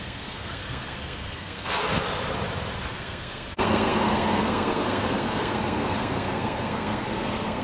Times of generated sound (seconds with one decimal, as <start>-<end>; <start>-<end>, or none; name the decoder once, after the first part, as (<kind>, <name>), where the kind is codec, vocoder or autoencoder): 0.0-1.8 (codec, SNAC); 2.9-7.6